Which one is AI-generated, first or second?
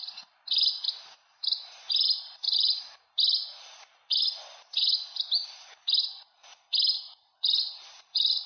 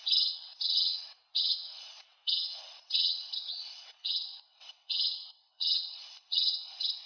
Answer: second